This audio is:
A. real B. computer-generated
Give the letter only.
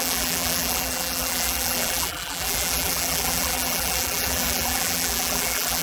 B